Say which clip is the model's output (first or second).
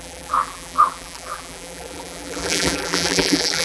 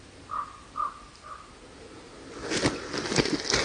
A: first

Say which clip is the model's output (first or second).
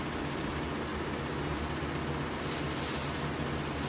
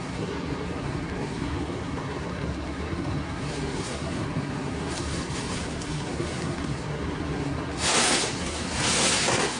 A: second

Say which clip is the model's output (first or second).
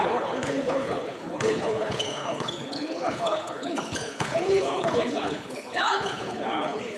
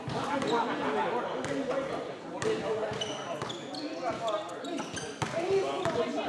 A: first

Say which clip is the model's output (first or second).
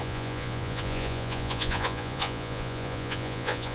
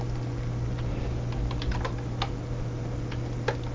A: first